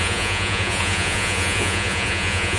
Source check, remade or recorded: remade